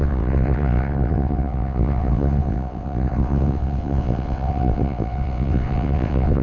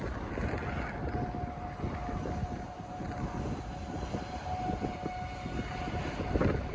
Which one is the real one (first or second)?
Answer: second